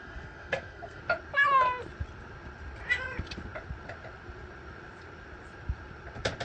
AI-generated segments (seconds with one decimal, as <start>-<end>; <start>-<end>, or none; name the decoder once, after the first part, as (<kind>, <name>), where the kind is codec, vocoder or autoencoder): 0.0-1.0 (codec, SNAC)